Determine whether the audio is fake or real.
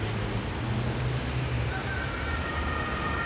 real